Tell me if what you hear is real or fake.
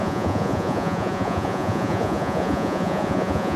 fake